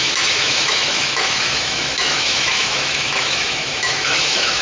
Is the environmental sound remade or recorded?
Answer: remade